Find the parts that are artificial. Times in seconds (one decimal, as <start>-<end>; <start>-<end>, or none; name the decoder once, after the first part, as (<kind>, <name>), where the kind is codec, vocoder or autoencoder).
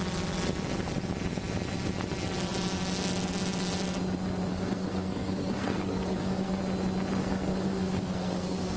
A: 4.5-6.6 (codec, SNAC); 7.2-8.8